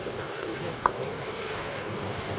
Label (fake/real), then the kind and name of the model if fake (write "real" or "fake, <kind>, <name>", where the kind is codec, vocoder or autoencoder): fake, codec, DAC